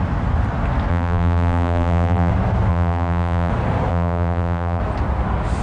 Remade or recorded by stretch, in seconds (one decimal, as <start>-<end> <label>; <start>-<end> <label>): 0.0-0.9 recorded; 0.9-2.3 remade; 2.3-2.7 recorded; 2.7-3.5 remade; 3.5-3.9 recorded; 3.9-4.8 remade; 4.8-5.6 recorded